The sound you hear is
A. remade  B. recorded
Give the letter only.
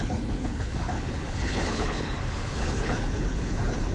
A